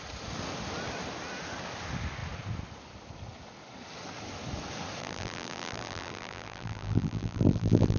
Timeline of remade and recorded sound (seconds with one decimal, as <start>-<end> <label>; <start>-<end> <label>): 0.0-5.0 recorded; 5.0-8.0 remade